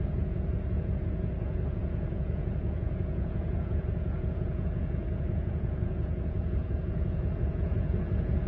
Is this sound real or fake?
fake